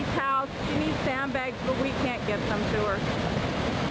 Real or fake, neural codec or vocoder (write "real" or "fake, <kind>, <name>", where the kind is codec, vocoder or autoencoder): real